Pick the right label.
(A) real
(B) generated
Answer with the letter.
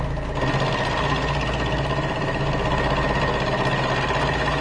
A